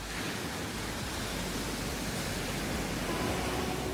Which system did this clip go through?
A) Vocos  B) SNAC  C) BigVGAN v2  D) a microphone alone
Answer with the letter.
D